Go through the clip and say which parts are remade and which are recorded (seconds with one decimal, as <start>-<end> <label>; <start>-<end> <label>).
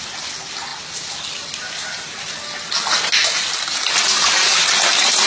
0.0-5.3 recorded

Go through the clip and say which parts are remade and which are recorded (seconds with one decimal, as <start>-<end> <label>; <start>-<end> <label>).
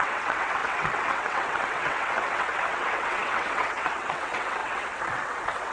0.0-5.7 remade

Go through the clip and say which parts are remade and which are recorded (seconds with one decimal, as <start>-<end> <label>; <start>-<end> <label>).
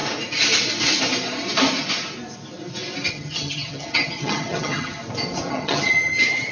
0.0-3.1 recorded; 3.1-5.0 remade; 5.0-5.5 recorded; 5.5-6.5 remade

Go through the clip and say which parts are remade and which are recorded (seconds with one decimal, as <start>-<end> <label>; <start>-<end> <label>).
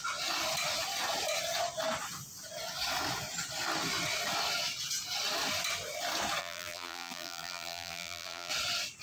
0.0-6.4 recorded; 6.4-8.5 remade; 8.5-9.0 recorded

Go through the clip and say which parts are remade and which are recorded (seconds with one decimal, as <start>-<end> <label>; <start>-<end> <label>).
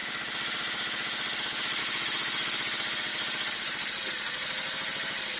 0.0-5.4 recorded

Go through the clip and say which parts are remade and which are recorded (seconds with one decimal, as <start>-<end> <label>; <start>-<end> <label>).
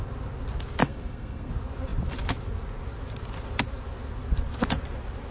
0.0-0.8 recorded; 0.8-1.5 remade; 1.5-5.3 recorded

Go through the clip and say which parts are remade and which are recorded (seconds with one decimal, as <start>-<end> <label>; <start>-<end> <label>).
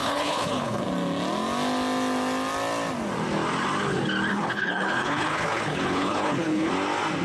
0.0-0.8 remade; 0.8-4.3 recorded; 4.3-6.7 remade; 6.7-7.2 recorded